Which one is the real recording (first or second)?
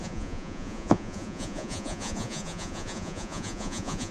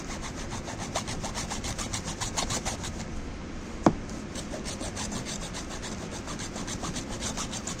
second